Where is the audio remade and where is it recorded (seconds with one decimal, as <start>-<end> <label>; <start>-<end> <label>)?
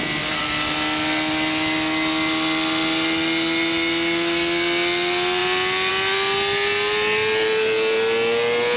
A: 0.0-8.8 recorded